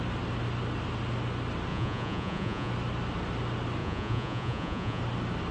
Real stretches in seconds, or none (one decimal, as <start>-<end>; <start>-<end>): 0.0-1.7; 2.7-3.8; 5.0-5.5